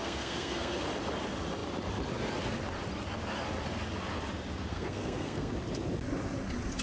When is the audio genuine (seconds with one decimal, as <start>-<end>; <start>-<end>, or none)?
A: 0.7-4.7; 5.5-6.8